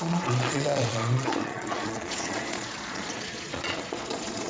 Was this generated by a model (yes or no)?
yes